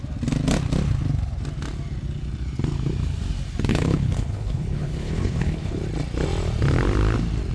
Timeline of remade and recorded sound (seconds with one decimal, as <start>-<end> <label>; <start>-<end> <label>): 0.0-3.7 recorded; 3.7-5.8 remade; 5.8-7.5 recorded